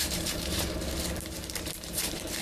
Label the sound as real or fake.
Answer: fake